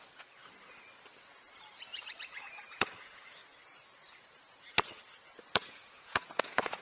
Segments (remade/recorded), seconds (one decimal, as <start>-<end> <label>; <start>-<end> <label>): 0.0-0.4 remade; 0.4-2.2 recorded; 2.2-3.4 remade; 3.4-5.3 recorded; 5.3-6.8 remade